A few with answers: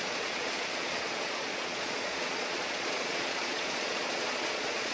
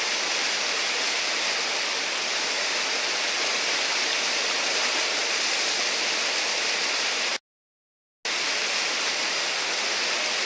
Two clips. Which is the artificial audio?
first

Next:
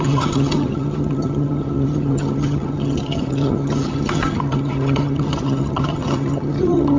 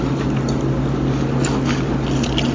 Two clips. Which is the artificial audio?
first